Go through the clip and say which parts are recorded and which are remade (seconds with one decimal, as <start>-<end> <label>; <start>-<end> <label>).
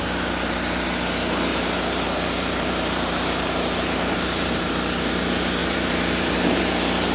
0.0-1.5 recorded; 1.5-4.7 remade; 4.7-5.6 recorded; 5.6-6.6 remade; 6.6-7.1 recorded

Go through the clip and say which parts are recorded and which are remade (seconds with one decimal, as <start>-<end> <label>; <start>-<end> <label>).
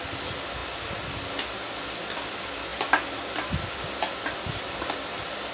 0.0-2.7 recorded; 2.7-3.2 remade; 3.2-5.5 recorded